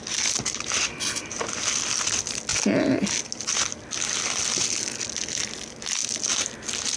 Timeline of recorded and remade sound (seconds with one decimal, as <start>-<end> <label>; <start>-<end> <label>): 0.0-7.0 recorded